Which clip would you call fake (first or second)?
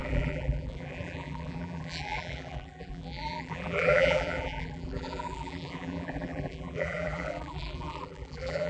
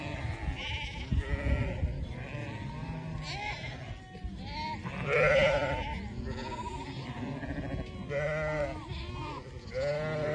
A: first